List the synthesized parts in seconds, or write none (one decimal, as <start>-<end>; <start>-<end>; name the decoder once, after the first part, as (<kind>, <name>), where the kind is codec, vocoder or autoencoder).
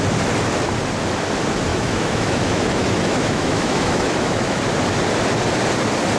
1.7-4.6 (autoencoder, DAC-VAE)